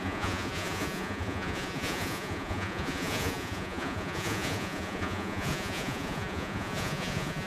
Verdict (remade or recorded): remade